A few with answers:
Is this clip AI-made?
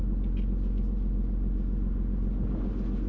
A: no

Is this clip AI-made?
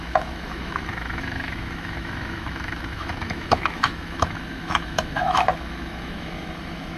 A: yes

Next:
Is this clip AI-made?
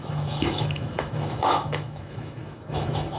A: yes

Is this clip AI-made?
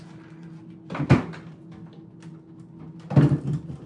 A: no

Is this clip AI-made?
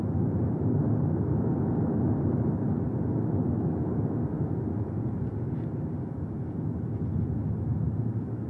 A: no